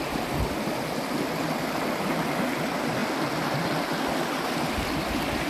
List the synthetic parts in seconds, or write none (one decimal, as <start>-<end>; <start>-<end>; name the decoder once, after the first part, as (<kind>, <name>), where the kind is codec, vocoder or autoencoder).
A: none